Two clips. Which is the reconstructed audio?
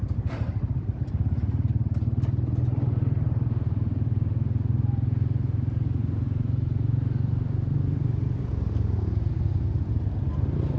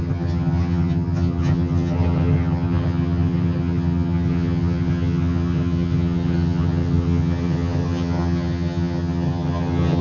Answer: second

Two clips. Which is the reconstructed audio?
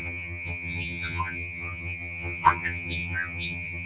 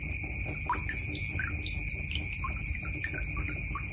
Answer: first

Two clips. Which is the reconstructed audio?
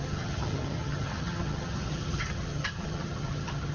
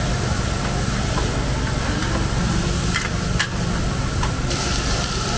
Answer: first